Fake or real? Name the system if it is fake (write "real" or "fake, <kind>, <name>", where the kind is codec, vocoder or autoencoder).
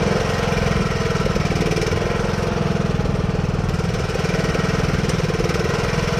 real